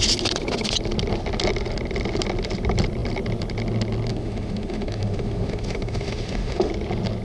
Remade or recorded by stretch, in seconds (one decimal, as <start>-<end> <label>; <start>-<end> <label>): 0.0-4.1 recorded; 4.1-6.7 remade; 6.7-7.2 recorded